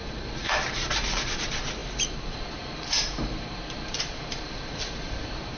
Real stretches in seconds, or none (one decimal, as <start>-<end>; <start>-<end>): none